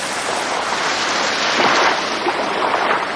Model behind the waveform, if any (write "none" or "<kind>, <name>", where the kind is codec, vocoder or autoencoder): none